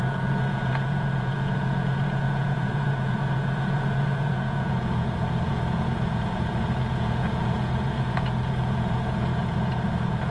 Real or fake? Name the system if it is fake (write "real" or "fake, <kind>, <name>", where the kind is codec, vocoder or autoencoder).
fake, vocoder, Vocos